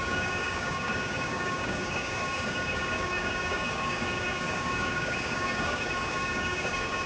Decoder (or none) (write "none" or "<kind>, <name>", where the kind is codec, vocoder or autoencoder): codec, DAC